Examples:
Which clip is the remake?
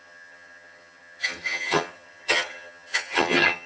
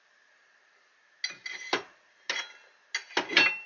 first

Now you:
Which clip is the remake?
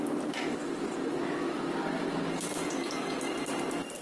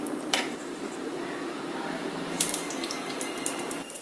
second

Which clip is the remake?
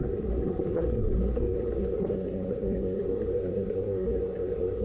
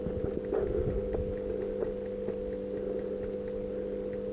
first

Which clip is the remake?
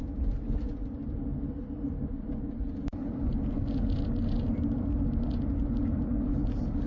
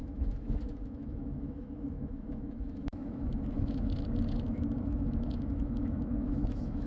second